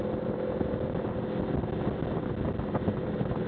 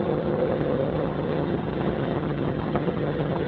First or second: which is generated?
second